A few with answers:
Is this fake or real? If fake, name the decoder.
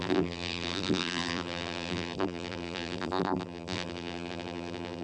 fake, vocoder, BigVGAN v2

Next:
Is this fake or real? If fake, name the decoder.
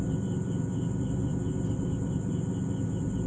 real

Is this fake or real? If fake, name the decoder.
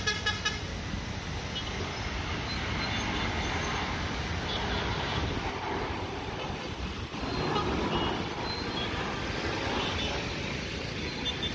real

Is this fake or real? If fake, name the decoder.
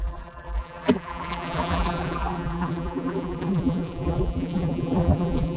fake, vocoder, BigVGAN v2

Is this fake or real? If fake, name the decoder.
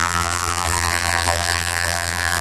fake, vocoder, BigVGAN v2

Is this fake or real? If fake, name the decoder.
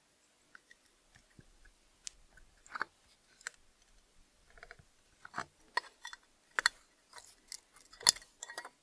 real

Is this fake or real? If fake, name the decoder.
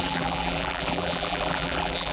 fake, vocoder, BigVGAN v2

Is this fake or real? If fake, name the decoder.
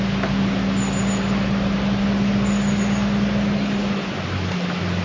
real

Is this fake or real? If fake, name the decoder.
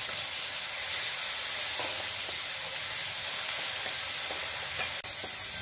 real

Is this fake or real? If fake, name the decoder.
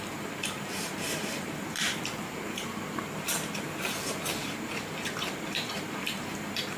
fake, vocoder, BigVGAN v2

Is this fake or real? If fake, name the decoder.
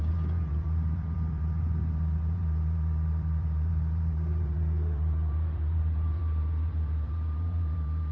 fake, vocoder, BigVGAN v2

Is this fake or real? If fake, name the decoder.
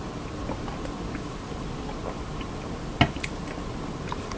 real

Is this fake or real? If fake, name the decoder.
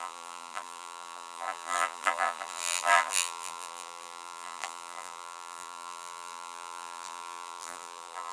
fake, vocoder, BigVGAN v2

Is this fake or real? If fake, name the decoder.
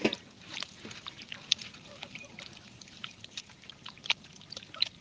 fake, vocoder, BigVGAN v2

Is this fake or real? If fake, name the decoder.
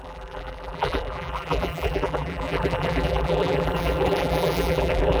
fake, vocoder, BigVGAN v2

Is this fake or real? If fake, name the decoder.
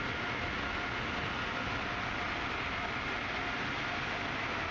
real